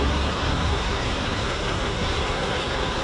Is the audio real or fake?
fake